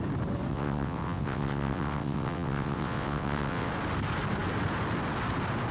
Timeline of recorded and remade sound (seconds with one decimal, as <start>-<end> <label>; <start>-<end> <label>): 0.0-0.5 recorded; 0.5-3.7 remade; 3.7-5.7 recorded